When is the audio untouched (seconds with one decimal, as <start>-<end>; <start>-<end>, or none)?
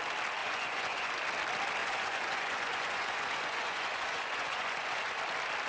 0.0-0.4; 1.1-1.8; 5.2-5.7